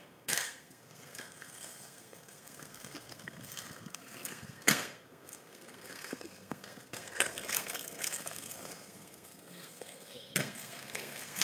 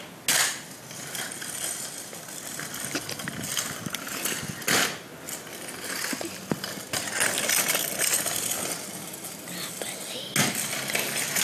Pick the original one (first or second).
second